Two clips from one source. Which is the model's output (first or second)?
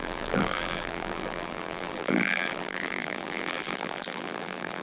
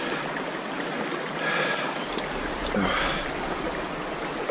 first